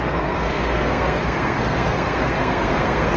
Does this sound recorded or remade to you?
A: remade